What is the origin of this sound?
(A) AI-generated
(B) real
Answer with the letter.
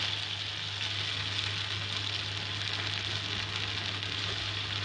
B